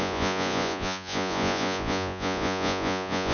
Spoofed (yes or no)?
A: yes